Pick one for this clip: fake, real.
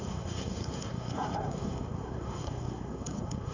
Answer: fake